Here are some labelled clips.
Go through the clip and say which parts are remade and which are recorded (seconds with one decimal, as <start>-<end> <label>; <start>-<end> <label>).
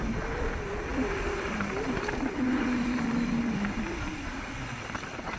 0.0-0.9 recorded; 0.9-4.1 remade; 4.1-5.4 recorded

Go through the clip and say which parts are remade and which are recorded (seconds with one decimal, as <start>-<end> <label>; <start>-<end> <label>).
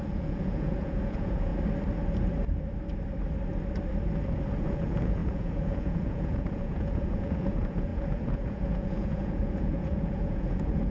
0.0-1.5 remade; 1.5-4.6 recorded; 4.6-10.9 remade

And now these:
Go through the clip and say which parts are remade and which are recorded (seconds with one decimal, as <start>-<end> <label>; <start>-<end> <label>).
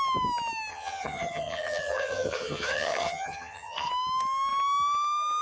0.0-0.7 recorded; 0.7-3.9 remade; 3.9-5.4 recorded